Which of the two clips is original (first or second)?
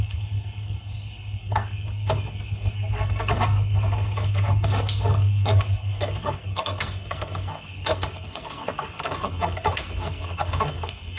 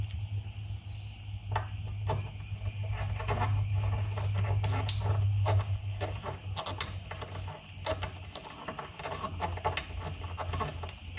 second